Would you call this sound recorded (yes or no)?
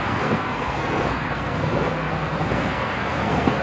no